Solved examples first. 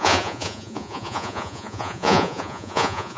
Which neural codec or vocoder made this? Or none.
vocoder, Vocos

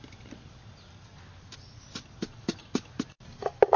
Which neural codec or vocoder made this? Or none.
none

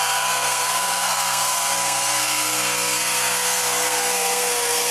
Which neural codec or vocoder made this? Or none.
codec, SNAC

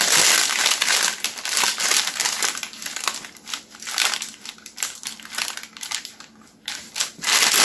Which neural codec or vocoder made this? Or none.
none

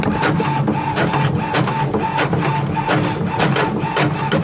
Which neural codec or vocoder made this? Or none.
none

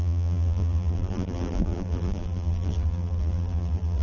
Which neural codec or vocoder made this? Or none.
vocoder, BigVGAN v2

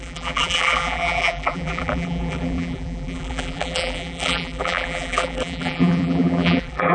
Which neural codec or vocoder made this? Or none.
vocoder, BigVGAN v2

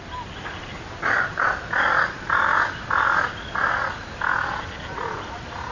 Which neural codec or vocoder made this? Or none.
none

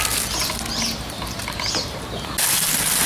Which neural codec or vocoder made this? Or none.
none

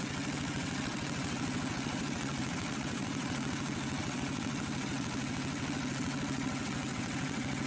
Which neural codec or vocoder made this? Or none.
vocoder, WaveNeXt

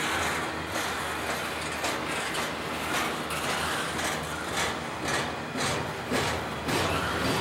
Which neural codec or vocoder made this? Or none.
none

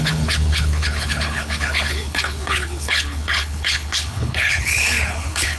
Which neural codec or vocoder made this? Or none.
codec, HILCodec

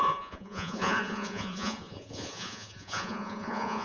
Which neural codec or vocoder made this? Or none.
vocoder, Vocos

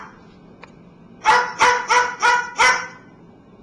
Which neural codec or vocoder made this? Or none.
none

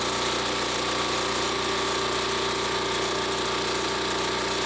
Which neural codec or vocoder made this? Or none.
none